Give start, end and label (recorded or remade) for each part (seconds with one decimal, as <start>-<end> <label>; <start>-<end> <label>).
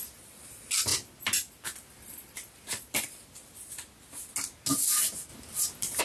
0.0-0.9 recorded; 0.9-3.7 remade; 3.7-5.3 recorded; 5.3-6.0 remade